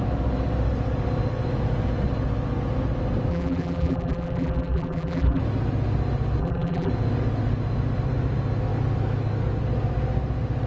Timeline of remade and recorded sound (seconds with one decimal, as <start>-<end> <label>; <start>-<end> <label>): 0.0-3.3 recorded; 3.3-5.4 remade; 5.4-6.4 recorded; 6.4-6.9 remade; 6.9-10.7 recorded